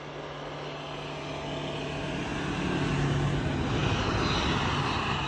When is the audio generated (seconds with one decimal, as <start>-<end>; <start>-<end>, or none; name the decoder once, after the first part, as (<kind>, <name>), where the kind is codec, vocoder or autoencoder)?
none

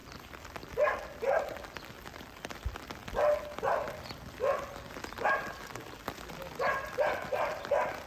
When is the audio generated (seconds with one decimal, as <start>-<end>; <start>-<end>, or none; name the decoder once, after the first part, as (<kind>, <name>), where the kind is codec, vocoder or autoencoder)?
0.0-0.5 (vocoder, BigVGAN v2)

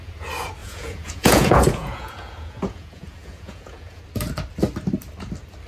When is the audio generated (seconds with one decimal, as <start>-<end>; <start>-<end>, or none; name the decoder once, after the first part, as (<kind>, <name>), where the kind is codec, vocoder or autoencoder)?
0.6-4.0 (vocoder, Vocos)

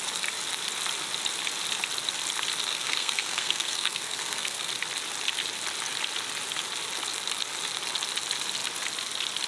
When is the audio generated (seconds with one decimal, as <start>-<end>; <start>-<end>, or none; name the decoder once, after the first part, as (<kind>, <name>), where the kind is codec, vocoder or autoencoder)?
2.7-4.7 (codec, SNAC)

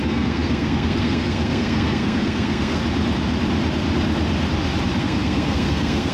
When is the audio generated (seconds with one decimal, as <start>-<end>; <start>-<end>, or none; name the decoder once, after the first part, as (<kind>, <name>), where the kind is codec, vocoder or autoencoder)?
0.0-2.8 (codec, SNAC); 5.0-6.1

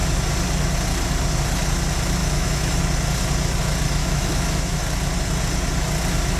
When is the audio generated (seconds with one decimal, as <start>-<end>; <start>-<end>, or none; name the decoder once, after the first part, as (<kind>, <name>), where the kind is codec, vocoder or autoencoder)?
2.2-2.8 (autoencoder, DAC-VAE); 4.0-4.8

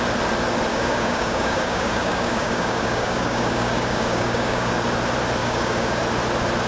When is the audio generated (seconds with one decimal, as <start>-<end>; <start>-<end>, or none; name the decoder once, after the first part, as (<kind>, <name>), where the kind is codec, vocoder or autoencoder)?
0.7-4.7 (codec, DAC); 5.4-6.0

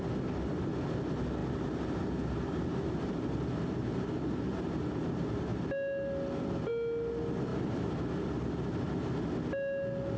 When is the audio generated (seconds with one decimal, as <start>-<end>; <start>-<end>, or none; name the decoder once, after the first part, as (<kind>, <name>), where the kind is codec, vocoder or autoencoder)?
1.4-3.4 (vocoder, BigVGAN v2); 3.8-5.6; 7.5-8.0